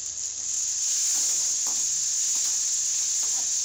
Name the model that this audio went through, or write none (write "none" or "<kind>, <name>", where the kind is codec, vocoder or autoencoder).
none